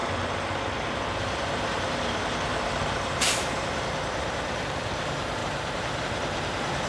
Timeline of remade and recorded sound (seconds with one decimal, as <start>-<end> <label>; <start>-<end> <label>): 0.0-1.2 recorded; 1.2-6.9 remade